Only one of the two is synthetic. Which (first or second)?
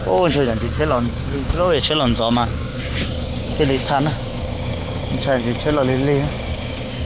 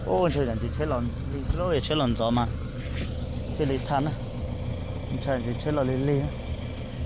first